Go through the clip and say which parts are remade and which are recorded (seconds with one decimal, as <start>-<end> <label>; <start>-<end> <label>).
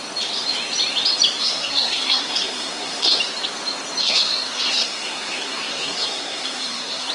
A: 0.0-1.4 recorded; 1.4-3.2 remade; 3.2-4.0 recorded; 4.0-7.1 remade